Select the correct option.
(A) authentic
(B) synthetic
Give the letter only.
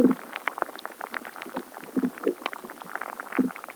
B